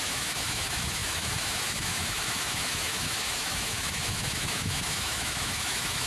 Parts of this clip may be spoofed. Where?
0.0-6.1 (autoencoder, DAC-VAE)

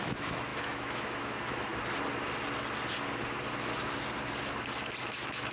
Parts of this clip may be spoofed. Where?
0.0-1.7 (autoencoder, DAC-VAE); 5.0-5.5

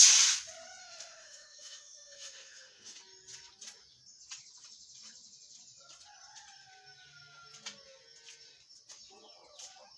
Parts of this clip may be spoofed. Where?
0.8-3.0 (autoencoder, DAC-VAE)

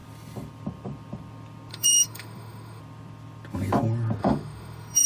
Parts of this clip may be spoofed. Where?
1.7-2.8 (autoencoder, DAC-VAE); 4.2-5.1

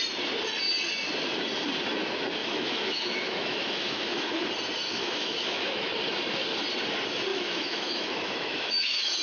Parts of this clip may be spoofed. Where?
2.4-4.5 (autoencoder, DAC-VAE); 4.9-5.9; 7.3-9.2